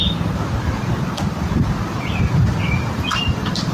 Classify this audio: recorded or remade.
recorded